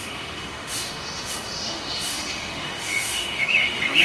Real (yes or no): no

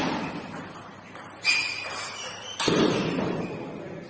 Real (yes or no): yes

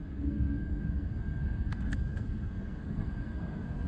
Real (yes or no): no